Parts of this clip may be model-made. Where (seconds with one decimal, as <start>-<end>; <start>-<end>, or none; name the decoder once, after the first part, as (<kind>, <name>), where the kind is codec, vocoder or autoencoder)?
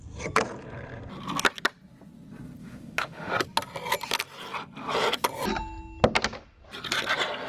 2.6-3.3 (autoencoder, DAC-VAE)